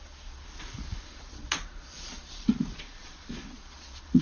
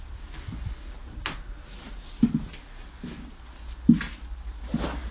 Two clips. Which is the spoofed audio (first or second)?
first